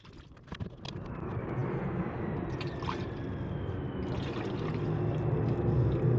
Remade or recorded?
recorded